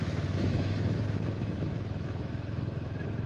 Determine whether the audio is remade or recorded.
remade